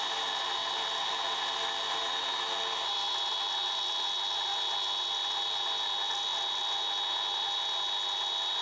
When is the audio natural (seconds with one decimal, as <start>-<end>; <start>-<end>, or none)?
0.0-8.6